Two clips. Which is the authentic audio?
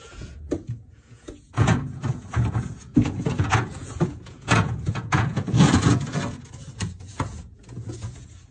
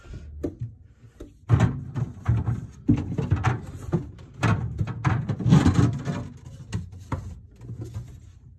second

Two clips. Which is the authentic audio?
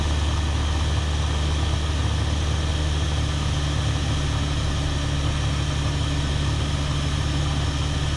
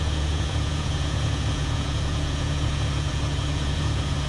first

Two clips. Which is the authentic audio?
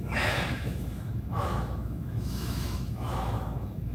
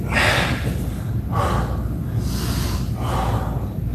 second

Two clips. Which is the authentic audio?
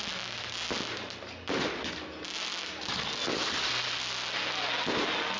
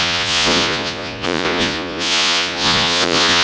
first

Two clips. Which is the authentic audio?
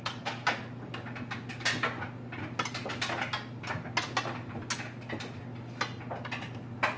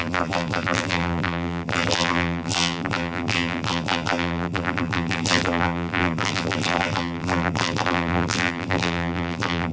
first